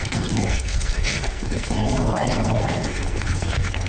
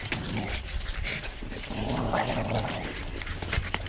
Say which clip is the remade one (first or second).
first